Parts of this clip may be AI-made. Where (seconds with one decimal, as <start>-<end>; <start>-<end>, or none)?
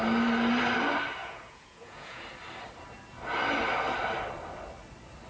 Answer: 1.2-2.2